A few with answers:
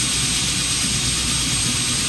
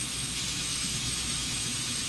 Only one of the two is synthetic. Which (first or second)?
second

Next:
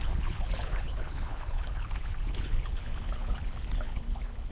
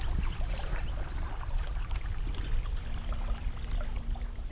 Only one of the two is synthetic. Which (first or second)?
first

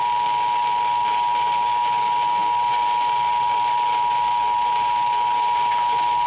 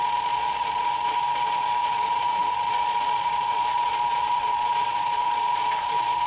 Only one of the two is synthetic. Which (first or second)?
second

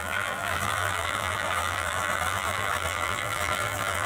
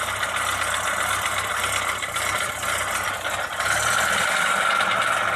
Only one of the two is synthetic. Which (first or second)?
first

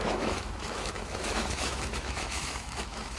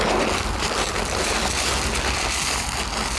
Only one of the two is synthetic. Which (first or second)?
first